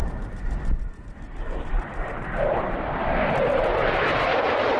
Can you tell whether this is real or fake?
real